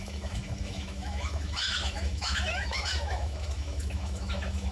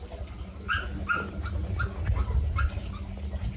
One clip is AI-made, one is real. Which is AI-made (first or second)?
first